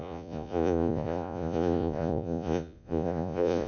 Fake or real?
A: fake